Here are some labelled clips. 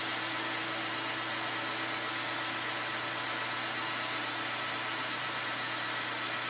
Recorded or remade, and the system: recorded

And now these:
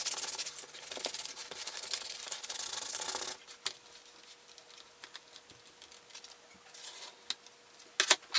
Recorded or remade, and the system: recorded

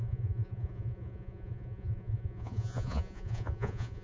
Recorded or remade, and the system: remade, vocoder, Vocos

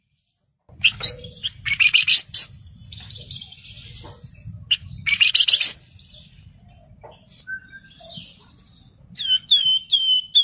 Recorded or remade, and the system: recorded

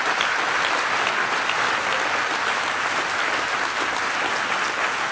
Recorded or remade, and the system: recorded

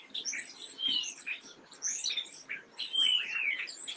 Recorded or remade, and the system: recorded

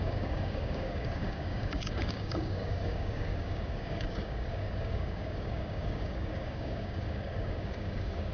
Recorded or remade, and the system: remade, codec, DAC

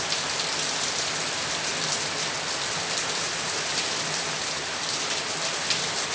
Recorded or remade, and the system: remade, vocoder, BigVGAN v2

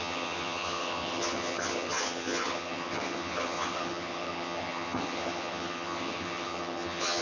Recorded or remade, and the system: remade, vocoder, HiFi-GAN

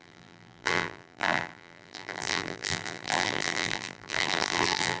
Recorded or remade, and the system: remade, vocoder, BigVGAN v2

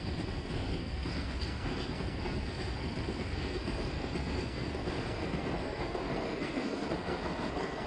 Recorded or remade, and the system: remade, codec, SNAC